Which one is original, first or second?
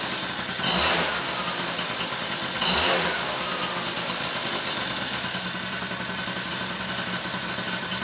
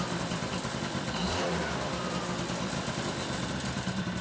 first